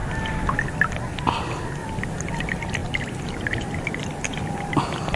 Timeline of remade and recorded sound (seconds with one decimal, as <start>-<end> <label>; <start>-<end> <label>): 0.0-1.8 recorded; 1.8-2.4 remade; 2.4-2.8 recorded; 2.8-4.8 remade; 4.8-5.2 recorded